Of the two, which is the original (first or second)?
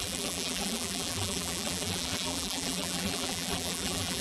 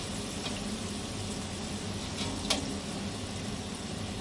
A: second